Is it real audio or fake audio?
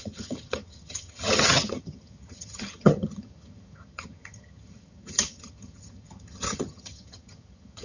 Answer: fake